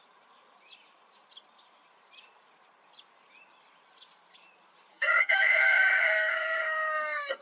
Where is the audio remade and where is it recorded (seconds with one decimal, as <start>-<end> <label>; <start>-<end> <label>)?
0.0-4.9 recorded; 4.9-7.4 remade